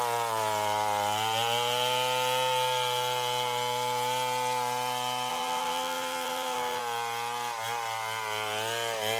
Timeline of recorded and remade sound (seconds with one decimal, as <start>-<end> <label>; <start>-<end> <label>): 0.0-5.3 recorded; 5.3-6.8 remade; 6.8-9.2 recorded